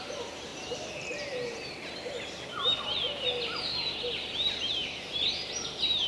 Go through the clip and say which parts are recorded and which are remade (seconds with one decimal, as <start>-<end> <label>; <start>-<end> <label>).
0.0-0.5 remade; 0.5-4.2 recorded; 4.2-6.1 remade